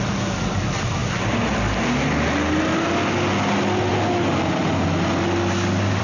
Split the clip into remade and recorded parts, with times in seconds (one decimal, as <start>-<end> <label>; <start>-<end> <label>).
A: 0.0-6.0 recorded